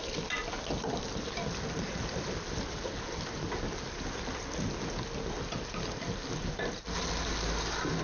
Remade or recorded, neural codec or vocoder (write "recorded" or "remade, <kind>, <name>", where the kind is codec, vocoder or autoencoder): recorded